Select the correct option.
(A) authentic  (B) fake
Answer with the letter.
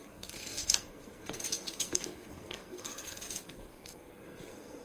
B